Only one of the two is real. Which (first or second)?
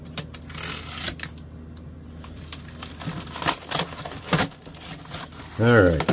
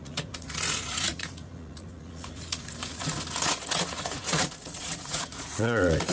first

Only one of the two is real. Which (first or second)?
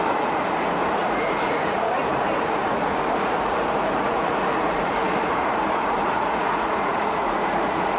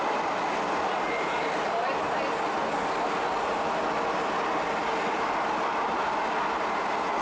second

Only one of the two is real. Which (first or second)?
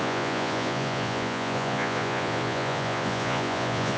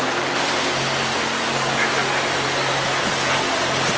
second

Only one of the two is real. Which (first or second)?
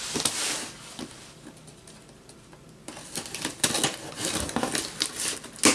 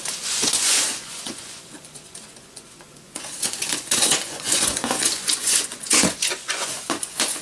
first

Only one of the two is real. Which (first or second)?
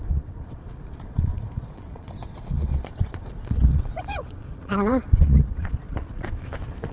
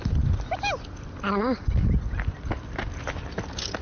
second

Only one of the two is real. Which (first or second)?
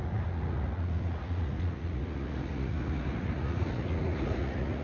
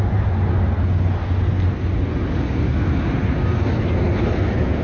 second